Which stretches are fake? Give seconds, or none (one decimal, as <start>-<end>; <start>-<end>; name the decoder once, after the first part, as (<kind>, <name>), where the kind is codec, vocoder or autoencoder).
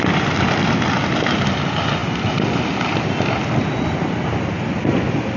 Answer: none